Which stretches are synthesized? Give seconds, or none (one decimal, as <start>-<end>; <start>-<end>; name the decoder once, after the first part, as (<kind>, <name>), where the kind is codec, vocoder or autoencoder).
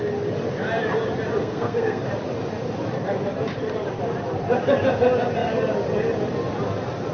1.4-2.1 (codec, SNAC)